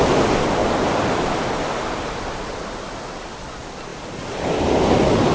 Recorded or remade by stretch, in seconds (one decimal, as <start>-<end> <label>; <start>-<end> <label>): 0.0-5.3 recorded